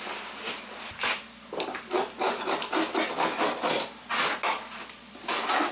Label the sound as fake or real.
real